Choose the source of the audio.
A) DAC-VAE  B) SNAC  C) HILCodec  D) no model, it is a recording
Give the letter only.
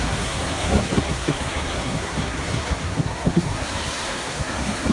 B